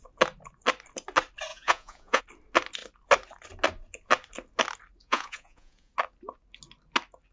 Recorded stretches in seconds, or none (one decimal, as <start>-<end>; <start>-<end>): 0.0-1.5; 2.2-5.0; 5.9-7.3